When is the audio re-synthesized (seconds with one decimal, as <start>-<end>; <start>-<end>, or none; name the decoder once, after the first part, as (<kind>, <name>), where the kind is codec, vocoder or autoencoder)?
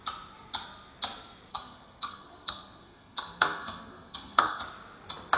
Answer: 1.5-4.6 (codec, SNAC)